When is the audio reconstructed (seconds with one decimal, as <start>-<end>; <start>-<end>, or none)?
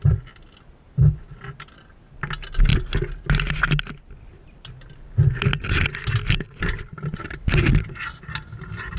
none